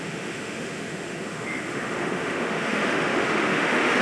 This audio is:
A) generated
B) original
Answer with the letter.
A